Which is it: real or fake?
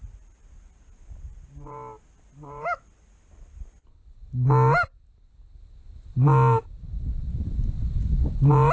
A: real